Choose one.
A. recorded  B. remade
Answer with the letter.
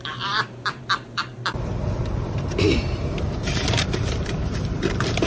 B